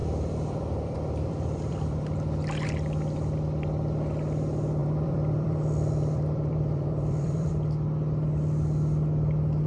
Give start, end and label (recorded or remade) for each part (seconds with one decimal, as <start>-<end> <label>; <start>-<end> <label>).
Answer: 0.0-2.0 remade; 2.0-4.8 recorded; 4.8-7.5 remade; 7.5-9.7 recorded